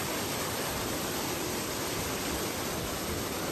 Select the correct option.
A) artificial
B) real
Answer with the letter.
B